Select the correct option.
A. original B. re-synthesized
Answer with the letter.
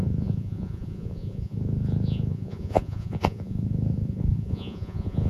B